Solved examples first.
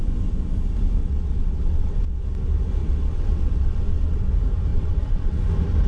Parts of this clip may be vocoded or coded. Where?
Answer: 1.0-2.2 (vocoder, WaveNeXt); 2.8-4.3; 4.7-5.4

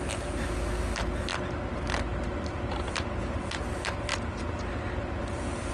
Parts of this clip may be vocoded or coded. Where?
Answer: 4.1-4.6 (vocoder, BigVGAN v2)

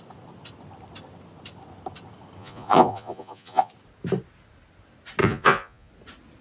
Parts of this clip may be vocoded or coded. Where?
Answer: 2.4-3.7 (vocoder, Vocos); 5.2-5.9